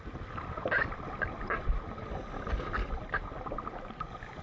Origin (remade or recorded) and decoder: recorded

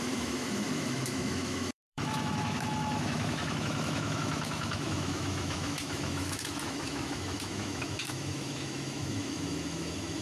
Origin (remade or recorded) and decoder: remade, autoencoder, DAC-VAE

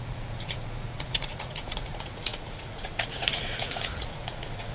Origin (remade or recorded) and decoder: remade, vocoder, Vocos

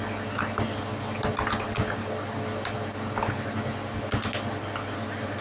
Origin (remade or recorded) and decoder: recorded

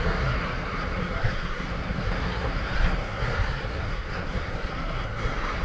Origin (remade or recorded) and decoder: remade, codec, SNAC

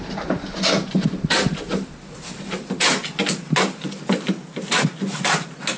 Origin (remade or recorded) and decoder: recorded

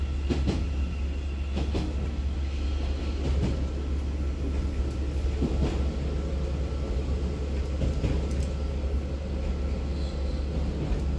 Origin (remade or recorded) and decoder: recorded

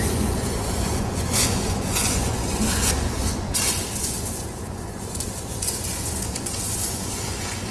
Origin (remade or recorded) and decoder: remade, vocoder, Vocos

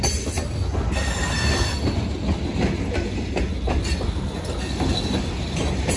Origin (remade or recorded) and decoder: recorded